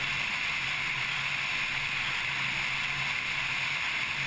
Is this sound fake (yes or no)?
no